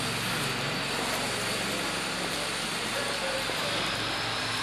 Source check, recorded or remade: recorded